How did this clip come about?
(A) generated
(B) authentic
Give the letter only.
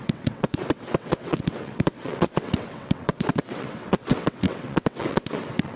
A